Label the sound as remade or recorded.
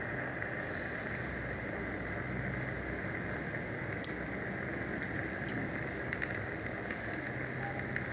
recorded